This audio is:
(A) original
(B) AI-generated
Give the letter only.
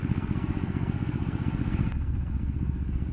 B